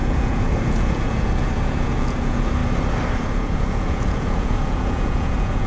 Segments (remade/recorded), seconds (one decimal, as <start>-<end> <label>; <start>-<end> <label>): 0.0-2.6 remade; 2.6-3.2 recorded; 3.2-5.7 remade